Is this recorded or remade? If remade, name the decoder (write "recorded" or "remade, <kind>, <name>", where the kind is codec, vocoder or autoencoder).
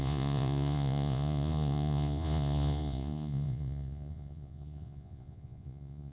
remade, vocoder, Vocos